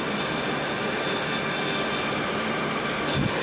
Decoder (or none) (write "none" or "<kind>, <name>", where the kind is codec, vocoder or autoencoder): none